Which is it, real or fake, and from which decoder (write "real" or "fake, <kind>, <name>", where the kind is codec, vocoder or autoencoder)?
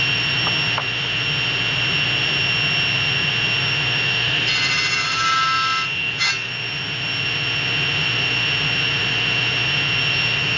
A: real